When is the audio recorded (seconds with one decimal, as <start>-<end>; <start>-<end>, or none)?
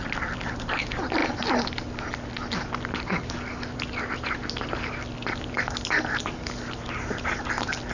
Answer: 0.0-7.9